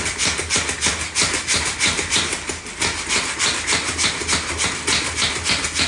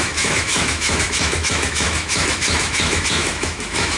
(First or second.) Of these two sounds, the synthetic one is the second